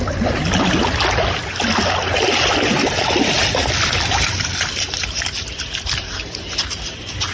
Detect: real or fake real